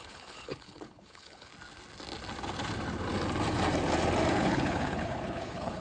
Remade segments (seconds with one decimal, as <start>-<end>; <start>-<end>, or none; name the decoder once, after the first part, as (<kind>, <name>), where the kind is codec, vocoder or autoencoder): 0.0-1.5 (codec, HILCodec); 4.3-5.8